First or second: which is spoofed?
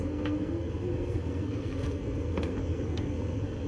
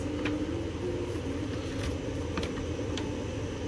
first